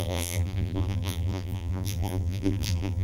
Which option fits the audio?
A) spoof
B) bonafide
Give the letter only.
A